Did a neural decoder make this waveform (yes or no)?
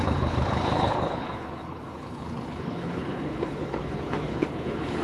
yes